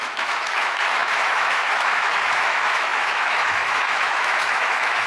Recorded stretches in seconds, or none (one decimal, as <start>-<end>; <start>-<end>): none